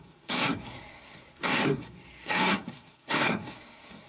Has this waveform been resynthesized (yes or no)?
yes